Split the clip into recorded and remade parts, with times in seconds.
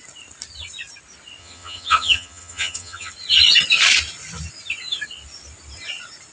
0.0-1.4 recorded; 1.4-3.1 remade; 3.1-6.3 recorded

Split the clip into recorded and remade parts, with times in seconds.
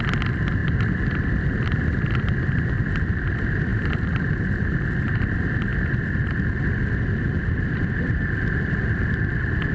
0.0-0.6 recorded; 0.6-2.4 remade; 2.4-3.7 recorded; 3.7-4.9 remade; 4.9-9.7 recorded